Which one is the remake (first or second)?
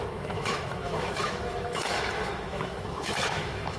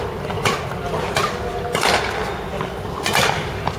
first